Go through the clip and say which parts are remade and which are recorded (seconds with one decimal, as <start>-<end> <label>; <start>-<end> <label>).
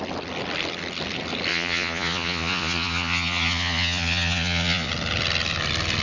0.0-1.5 recorded; 1.5-4.9 remade; 4.9-6.0 recorded